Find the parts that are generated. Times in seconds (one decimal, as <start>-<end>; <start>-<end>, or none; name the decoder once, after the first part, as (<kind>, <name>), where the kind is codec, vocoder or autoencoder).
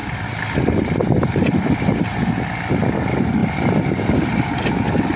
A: 0.0-2.3 (vocoder, BigVGAN v2)